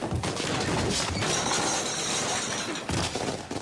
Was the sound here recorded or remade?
recorded